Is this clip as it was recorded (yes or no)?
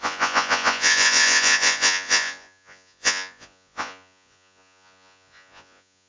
no